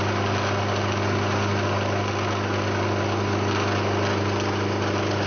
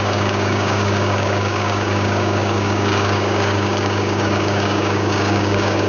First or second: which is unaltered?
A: first